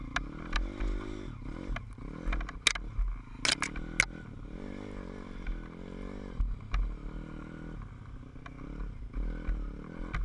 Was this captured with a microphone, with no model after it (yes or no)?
yes